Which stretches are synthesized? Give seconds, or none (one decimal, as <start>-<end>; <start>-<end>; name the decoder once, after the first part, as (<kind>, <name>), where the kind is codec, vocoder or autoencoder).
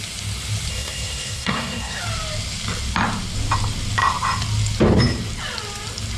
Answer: 0.7-2.0 (codec, SNAC)